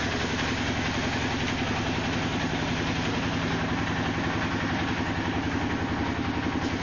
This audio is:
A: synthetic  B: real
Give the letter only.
B